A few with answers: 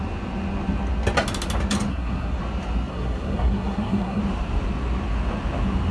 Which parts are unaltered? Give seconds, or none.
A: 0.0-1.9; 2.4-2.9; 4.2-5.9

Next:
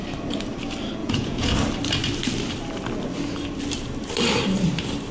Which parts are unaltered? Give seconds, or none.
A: 0.0-1.0; 1.5-5.1

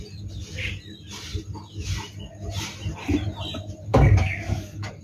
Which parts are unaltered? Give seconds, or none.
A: 0.0-3.9

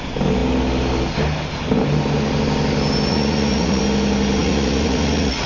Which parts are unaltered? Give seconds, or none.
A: 0.0-3.1; 3.8-4.4

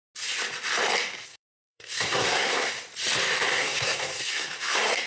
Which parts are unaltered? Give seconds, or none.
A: 0.0-1.3; 2.7-3.5